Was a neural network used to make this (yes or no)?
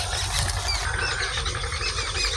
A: no